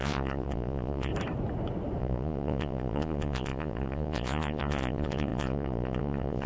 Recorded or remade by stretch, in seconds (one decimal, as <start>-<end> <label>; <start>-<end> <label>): 0.0-1.1 remade; 1.1-2.0 recorded; 2.0-6.5 remade